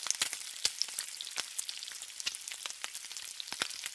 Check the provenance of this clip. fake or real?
real